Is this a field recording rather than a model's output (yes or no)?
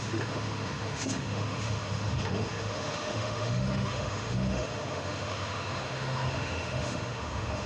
no